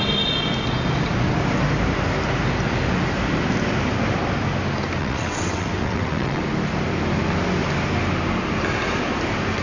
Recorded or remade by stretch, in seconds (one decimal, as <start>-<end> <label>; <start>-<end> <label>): 0.0-5.0 recorded; 5.0-6.4 remade; 6.4-9.6 recorded